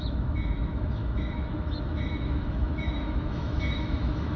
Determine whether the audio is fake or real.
fake